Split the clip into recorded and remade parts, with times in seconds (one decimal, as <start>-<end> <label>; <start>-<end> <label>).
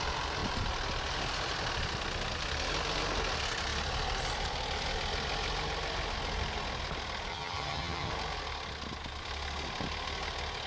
0.0-7.3 recorded; 7.3-8.1 remade; 8.1-10.7 recorded